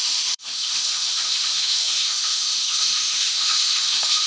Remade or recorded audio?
remade